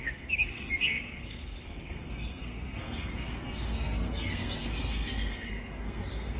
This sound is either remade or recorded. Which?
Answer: remade